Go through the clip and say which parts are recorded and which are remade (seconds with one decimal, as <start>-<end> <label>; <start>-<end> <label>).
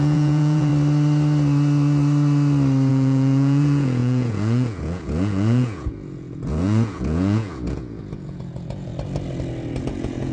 0.0-0.7 remade; 0.7-2.9 recorded; 2.9-8.9 remade; 8.9-9.8 recorded; 9.8-10.3 remade